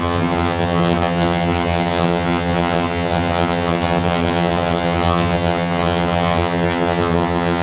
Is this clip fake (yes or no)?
yes